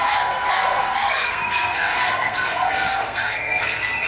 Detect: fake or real fake